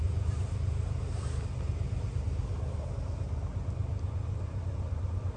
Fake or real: real